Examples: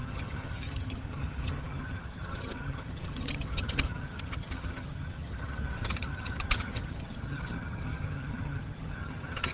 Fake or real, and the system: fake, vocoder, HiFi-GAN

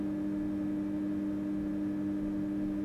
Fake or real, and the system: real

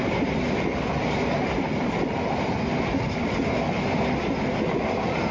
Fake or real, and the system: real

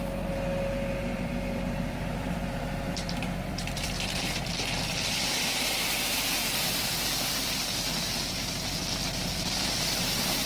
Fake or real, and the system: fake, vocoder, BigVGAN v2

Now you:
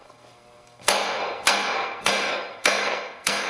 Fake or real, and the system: fake, codec, SNAC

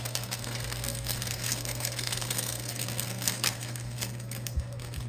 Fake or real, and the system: fake, codec, SNAC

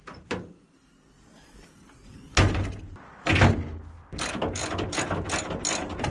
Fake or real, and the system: real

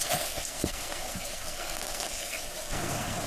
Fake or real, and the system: fake, codec, SNAC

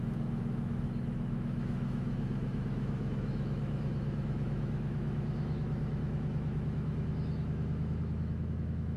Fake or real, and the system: fake, autoencoder, DAC-VAE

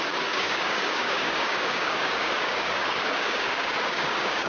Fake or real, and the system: fake, codec, DAC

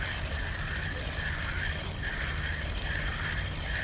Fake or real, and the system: real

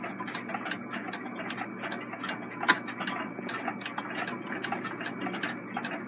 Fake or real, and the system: real